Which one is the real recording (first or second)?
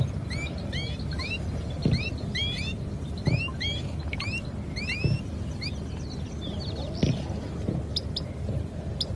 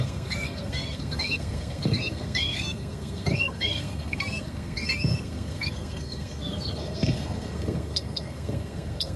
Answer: first